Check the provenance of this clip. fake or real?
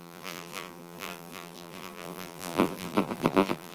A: fake